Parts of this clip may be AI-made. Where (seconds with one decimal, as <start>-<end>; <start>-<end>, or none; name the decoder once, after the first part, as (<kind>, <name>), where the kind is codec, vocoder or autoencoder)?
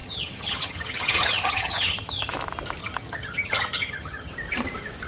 0.0-2.3 (vocoder, HiFi-GAN); 2.8-4.3